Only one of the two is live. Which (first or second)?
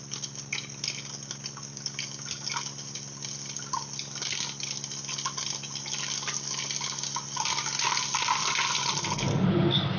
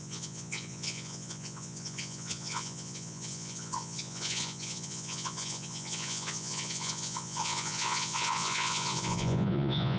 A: first